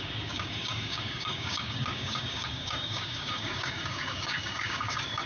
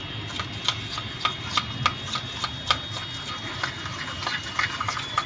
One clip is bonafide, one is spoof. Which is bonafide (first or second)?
second